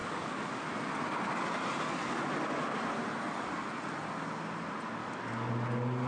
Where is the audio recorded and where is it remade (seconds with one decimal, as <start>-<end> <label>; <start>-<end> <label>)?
0.0-0.6 remade; 0.6-5.0 recorded; 5.0-5.5 remade; 5.5-6.1 recorded